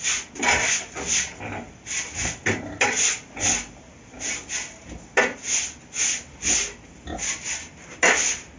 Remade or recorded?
recorded